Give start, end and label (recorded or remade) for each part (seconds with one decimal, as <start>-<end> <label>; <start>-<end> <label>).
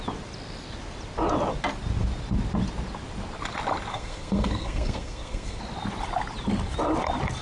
0.0-3.9 recorded; 3.9-5.6 remade; 5.6-7.4 recorded